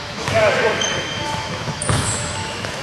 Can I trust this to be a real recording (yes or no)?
no